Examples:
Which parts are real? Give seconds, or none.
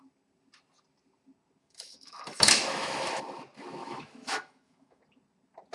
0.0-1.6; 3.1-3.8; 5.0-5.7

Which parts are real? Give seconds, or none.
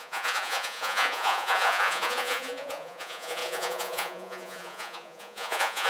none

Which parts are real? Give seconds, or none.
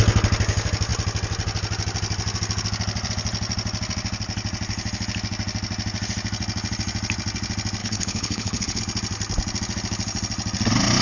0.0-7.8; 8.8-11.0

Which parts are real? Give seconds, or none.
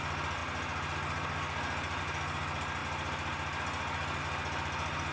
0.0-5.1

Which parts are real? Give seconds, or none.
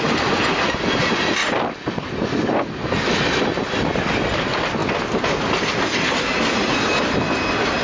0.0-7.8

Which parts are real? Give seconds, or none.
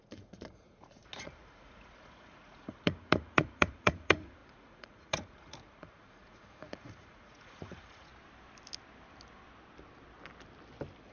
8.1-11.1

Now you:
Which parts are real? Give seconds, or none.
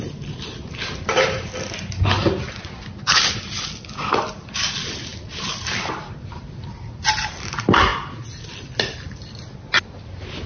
0.0-10.5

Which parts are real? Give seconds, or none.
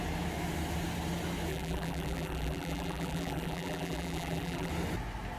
0.0-1.5; 4.7-5.4